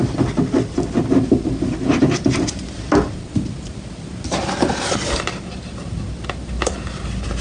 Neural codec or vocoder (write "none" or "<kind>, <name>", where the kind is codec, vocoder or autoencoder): none